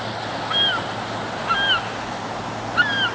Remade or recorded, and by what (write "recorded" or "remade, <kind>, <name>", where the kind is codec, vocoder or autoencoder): recorded